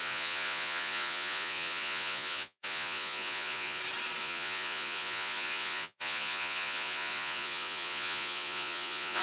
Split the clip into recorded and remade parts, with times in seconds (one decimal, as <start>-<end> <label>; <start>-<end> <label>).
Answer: 0.0-3.8 remade; 3.8-4.2 recorded; 4.2-9.2 remade